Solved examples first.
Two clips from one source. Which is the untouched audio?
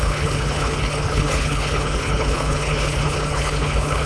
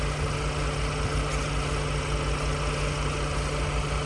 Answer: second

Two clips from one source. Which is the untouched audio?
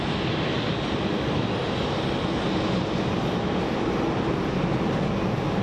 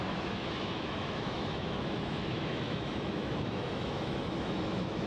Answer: first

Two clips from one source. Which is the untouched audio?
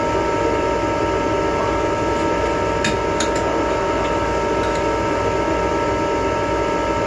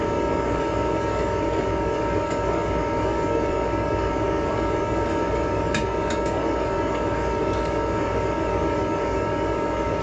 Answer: first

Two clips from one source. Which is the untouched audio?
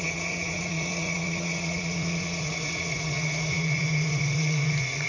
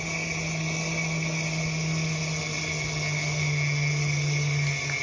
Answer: second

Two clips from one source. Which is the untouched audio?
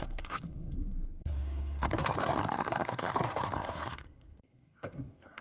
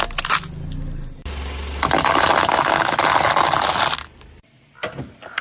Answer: second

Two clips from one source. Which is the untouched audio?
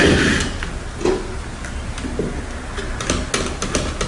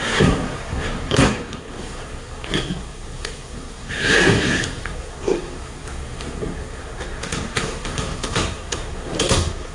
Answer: first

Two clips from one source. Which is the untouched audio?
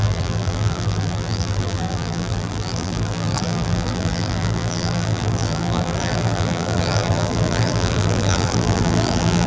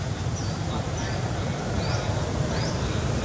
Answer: second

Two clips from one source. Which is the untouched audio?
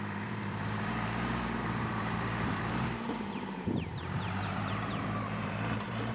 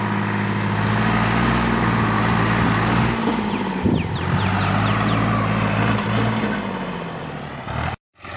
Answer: second